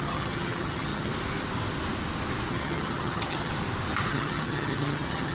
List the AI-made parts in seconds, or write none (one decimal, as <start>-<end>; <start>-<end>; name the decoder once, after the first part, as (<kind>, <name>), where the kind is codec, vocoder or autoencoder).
0.0-1.1 (vocoder, HiFi-GAN); 2.5-3.5; 4.1-5.3